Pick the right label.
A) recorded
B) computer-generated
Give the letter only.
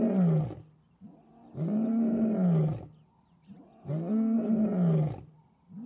A